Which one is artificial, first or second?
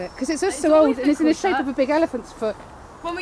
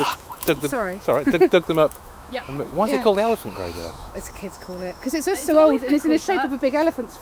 second